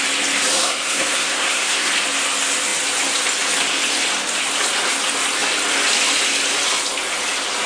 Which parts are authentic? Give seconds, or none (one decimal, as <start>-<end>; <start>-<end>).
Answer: 0.0-0.6; 1.9-7.7